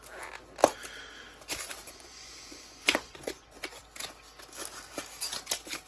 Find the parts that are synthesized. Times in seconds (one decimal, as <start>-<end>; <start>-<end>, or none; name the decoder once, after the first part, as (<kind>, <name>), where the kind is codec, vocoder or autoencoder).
1.7-3.6 (vocoder, Vocos)